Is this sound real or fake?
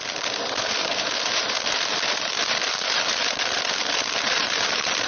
fake